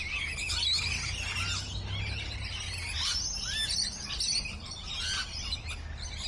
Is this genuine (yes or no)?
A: yes